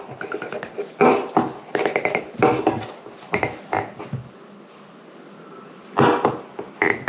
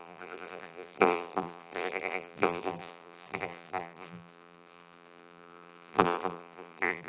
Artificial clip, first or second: second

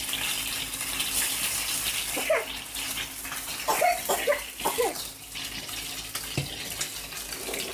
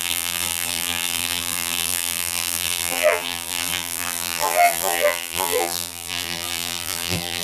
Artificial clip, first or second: second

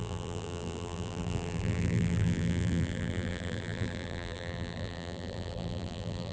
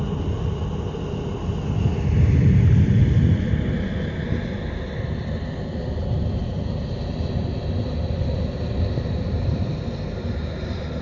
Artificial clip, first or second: first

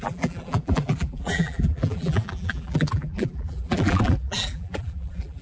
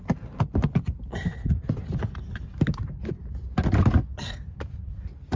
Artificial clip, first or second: first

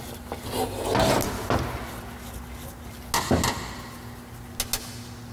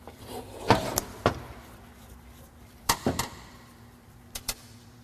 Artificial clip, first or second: second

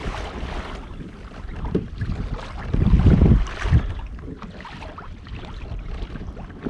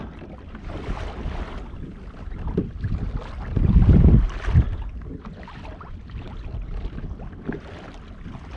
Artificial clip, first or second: first